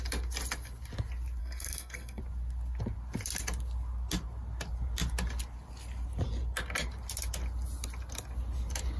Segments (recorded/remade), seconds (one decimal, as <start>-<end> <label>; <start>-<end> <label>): 0.0-1.4 recorded; 1.4-2.2 remade; 2.2-9.0 recorded